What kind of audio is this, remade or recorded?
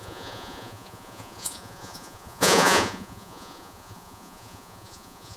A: remade